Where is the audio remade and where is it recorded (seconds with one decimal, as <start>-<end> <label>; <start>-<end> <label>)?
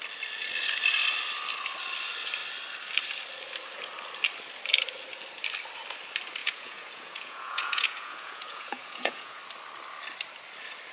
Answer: 0.0-6.4 recorded; 6.4-9.4 remade; 9.4-10.9 recorded